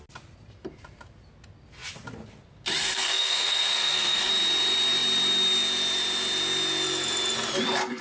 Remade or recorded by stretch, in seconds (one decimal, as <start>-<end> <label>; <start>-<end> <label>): 0.0-2.8 recorded; 2.8-4.3 remade; 4.3-8.0 recorded